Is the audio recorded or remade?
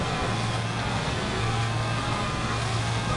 remade